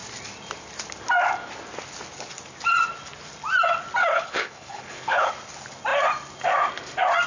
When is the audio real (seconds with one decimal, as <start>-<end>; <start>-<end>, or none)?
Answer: 0.0-4.0; 5.3-7.3